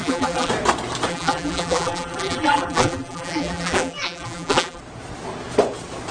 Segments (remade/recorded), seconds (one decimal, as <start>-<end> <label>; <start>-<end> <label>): 0.0-0.5 remade; 0.5-1.1 recorded; 1.1-4.8 remade; 4.8-6.1 recorded

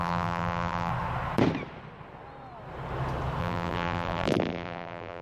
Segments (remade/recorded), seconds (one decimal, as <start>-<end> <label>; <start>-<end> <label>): 0.0-0.9 remade; 0.9-3.4 recorded; 3.4-5.2 remade

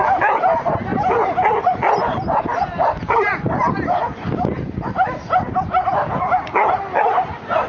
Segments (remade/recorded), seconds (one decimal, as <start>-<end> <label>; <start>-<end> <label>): 0.0-2.5 recorded; 2.5-7.0 remade; 7.0-7.7 recorded